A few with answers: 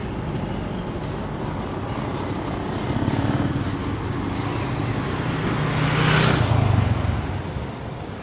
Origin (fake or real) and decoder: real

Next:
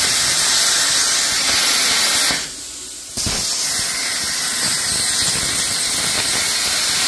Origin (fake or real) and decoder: real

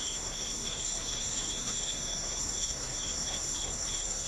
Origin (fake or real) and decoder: fake, codec, SNAC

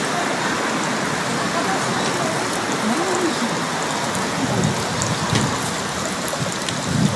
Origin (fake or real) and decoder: real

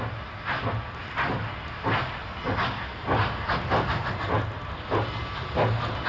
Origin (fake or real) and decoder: real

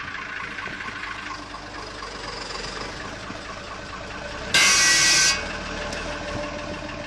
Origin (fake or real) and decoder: real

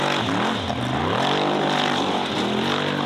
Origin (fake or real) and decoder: real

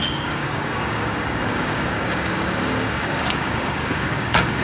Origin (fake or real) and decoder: fake, codec, DAC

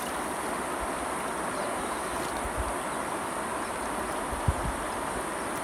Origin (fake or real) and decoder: real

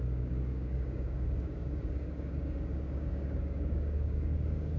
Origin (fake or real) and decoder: fake, codec, DAC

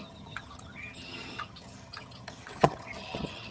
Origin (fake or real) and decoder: fake, vocoder, HiFi-GAN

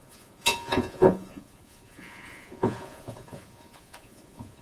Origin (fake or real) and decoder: fake, vocoder, Vocos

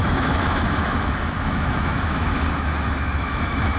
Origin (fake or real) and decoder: fake, autoencoder, DAC-VAE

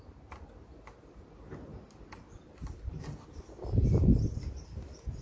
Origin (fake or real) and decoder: real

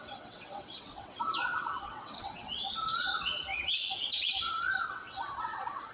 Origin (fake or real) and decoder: fake, vocoder, WaveNeXt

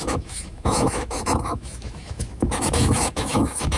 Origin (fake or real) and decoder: fake, autoencoder, DAC-VAE